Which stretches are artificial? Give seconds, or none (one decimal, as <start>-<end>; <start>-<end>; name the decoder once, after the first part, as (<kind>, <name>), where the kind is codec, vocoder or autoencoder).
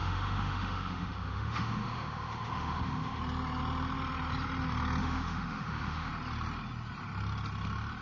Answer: 0.0-3.2 (autoencoder, DAC-VAE); 5.0-6.1